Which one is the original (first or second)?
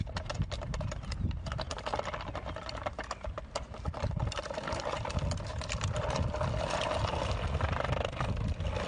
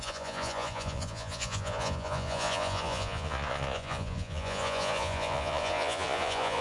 first